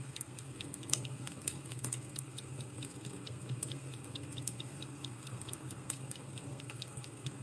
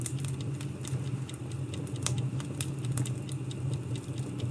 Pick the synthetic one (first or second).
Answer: first